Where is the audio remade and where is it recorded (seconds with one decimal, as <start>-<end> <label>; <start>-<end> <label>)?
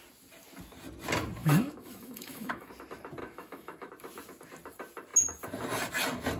0.0-1.4 recorded; 1.4-2.7 remade; 2.7-3.2 recorded; 3.2-3.9 remade; 3.9-6.4 recorded